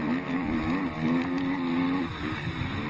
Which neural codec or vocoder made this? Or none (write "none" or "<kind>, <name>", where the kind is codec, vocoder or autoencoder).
none